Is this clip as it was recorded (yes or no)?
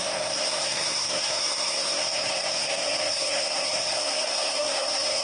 no